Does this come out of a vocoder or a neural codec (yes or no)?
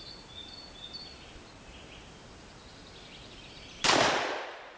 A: no